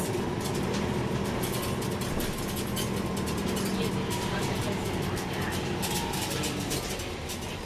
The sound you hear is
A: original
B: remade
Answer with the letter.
A